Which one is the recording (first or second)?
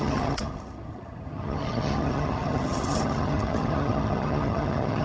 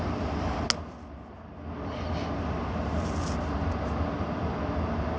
second